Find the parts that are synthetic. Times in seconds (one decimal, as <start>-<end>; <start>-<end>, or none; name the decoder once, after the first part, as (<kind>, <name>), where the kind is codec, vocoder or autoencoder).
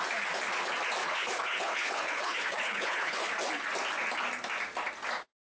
1.0-3.3 (codec, HILCodec)